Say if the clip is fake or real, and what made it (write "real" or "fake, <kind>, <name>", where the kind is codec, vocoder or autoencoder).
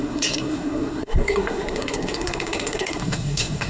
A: fake, codec, SNAC